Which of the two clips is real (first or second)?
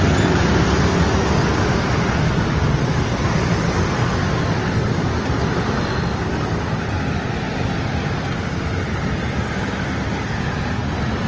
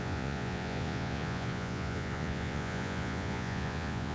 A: first